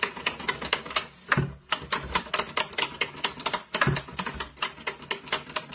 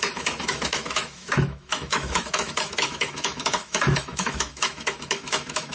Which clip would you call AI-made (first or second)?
second